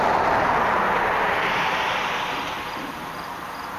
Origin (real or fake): real